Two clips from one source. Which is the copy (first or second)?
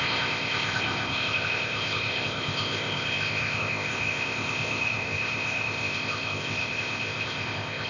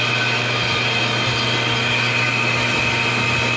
first